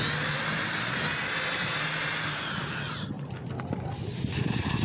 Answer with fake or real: real